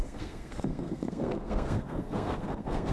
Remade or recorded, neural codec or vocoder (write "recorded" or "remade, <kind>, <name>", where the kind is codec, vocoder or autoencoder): remade, codec, SNAC